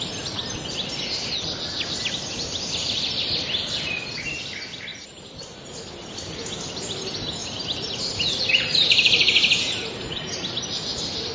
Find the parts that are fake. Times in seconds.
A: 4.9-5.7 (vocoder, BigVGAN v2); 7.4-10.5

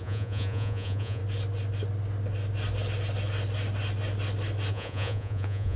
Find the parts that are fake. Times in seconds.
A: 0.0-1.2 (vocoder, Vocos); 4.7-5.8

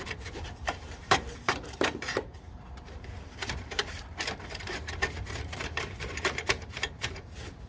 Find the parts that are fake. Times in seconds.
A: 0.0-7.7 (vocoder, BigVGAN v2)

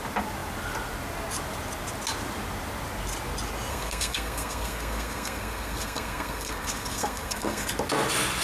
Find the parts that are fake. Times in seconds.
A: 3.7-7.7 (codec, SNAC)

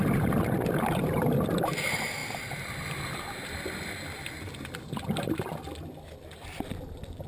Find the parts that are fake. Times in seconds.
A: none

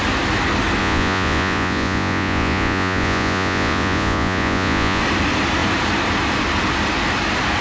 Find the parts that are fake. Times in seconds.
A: 0.8-5.0 (vocoder, Vocos)

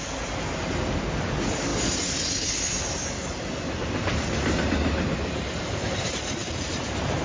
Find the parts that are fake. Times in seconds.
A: none

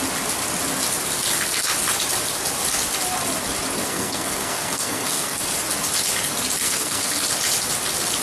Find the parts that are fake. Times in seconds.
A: 3.8-5.4 (codec, SNAC); 6.6-7.1